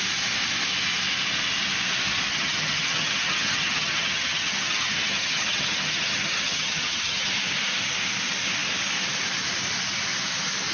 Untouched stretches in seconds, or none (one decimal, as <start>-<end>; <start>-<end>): 0.0-2.3; 7.3-10.7